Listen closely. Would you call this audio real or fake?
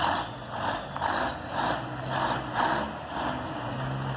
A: real